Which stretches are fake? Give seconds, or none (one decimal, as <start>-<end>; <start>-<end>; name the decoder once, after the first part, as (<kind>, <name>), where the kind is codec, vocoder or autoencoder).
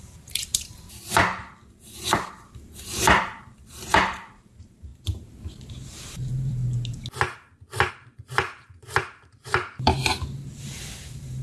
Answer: 0.0-4.9 (vocoder, BigVGAN v2); 5.7-6.6; 7.9-10.0; 10.6-11.4